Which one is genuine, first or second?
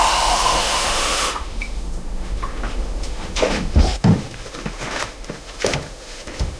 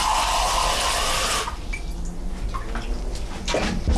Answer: second